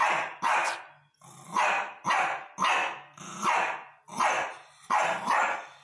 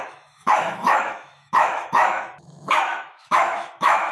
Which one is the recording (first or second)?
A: first